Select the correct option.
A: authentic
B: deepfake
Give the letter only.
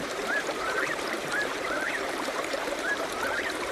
B